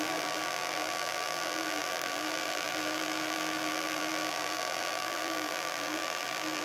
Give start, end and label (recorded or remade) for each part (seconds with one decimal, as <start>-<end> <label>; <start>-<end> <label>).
0.0-6.6 remade